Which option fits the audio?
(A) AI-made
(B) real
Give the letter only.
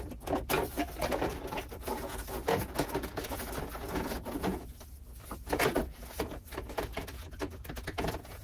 A